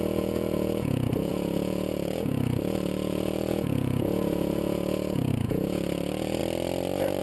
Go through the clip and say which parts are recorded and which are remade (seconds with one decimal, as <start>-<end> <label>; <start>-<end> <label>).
0.0-6.4 remade; 6.4-7.2 recorded